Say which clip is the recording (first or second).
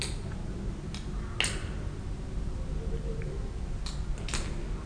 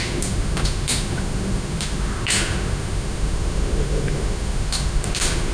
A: first